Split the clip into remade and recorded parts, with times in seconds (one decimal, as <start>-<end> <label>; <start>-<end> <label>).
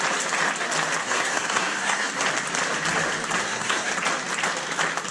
0.0-1.0 recorded; 1.0-2.1 remade; 2.1-3.4 recorded; 3.4-3.9 remade; 3.9-5.1 recorded